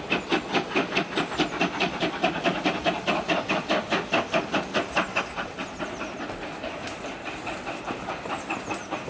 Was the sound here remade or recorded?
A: recorded